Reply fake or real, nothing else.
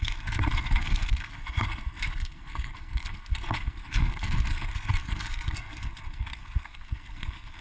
fake